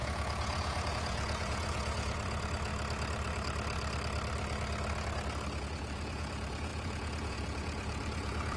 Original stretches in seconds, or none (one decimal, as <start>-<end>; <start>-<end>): 2.7-5.6